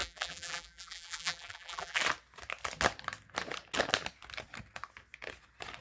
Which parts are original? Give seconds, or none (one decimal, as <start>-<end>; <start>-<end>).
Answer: 2.0-5.8